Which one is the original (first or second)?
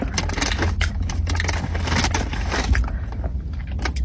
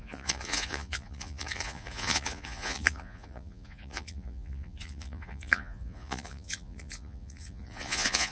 first